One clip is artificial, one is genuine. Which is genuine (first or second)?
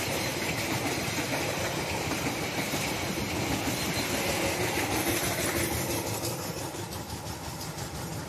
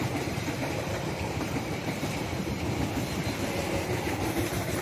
first